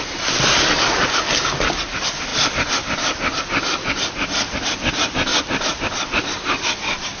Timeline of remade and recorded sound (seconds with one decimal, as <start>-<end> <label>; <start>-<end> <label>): 0.0-2.3 recorded; 2.3-3.4 remade; 3.4-5.3 recorded; 5.3-6.5 remade; 6.5-7.2 recorded